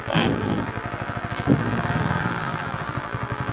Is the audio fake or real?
fake